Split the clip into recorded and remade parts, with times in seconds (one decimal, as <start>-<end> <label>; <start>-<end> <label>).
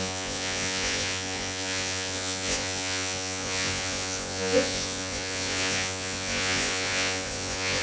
0.0-7.8 remade